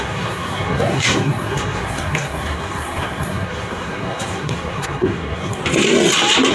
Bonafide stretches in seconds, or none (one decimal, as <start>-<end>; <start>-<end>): 5.6-6.5